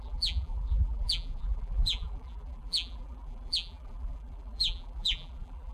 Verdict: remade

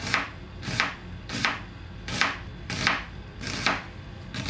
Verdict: remade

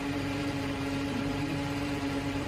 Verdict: remade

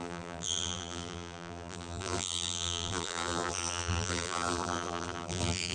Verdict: remade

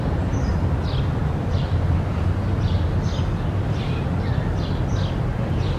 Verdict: recorded